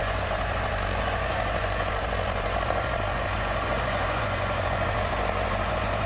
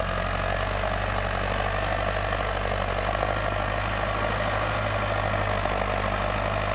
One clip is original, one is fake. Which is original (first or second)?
second